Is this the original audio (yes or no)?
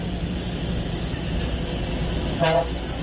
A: yes